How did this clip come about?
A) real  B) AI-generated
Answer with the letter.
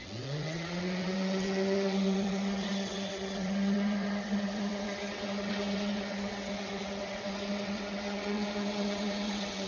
B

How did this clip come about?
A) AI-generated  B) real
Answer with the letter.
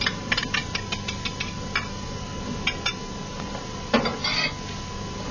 B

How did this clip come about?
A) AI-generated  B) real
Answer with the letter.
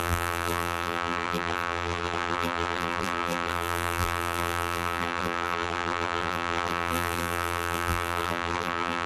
A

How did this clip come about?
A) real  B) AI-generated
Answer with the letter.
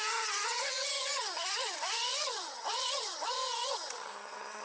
B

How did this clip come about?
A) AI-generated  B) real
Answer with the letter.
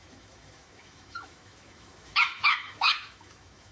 A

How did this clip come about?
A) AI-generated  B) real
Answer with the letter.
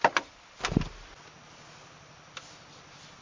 B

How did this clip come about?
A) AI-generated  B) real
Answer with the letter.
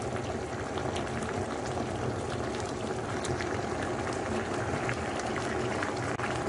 A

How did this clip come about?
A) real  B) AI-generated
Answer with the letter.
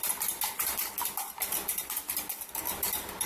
A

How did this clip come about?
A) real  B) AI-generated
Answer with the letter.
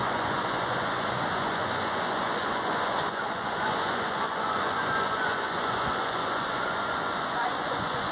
B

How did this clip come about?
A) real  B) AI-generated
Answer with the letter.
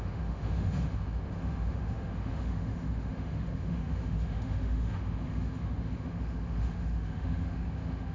B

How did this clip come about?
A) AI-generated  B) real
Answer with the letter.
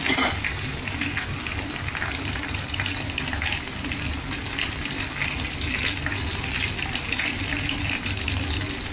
B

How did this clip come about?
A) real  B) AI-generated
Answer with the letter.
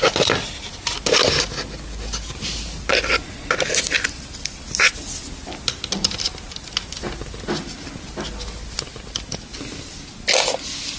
A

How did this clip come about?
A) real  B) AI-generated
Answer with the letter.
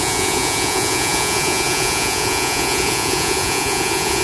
B